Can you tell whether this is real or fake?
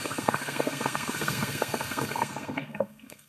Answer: fake